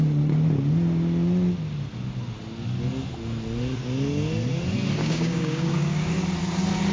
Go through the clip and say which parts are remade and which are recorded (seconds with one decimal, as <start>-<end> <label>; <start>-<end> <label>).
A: 0.0-5.0 recorded; 5.0-6.1 remade; 6.1-6.9 recorded